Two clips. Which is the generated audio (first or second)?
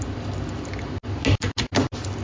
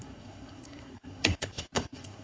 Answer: second